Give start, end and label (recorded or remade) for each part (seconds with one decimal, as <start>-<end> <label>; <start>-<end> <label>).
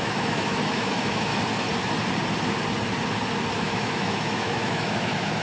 0.0-1.3 remade; 1.3-3.6 recorded; 3.6-5.4 remade